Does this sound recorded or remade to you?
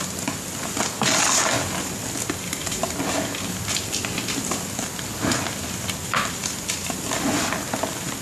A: recorded